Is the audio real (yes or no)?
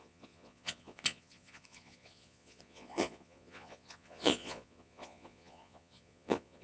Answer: no